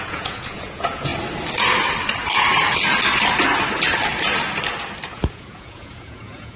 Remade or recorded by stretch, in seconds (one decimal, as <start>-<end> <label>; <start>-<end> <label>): 0.0-1.1 remade; 1.1-5.1 recorded; 5.1-6.6 remade